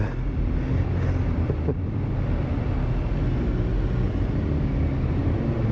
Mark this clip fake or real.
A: real